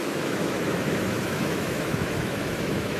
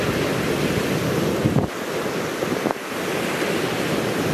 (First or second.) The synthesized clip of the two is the first